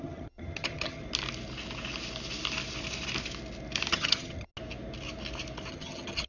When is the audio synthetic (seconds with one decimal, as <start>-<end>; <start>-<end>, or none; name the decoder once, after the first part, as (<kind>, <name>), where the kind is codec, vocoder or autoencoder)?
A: 0.0-1.0 (vocoder, HiFi-GAN); 3.9-4.5; 5.7-6.3